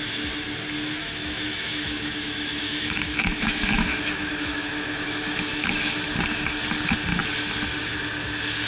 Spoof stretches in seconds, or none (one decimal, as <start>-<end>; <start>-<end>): 1.0-5.9